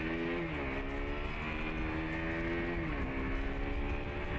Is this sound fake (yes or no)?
no